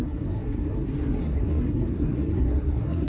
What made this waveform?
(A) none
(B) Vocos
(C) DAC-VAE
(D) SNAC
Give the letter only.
D